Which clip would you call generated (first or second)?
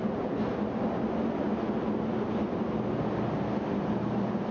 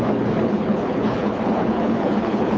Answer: second